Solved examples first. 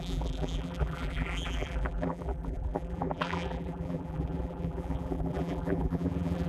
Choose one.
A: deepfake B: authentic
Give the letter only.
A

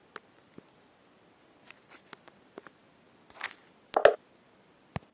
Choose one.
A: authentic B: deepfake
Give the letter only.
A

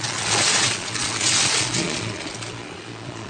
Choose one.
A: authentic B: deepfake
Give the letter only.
B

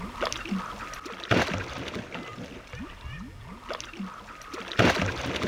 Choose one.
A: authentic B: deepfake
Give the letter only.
A